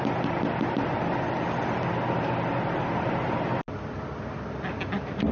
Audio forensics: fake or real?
real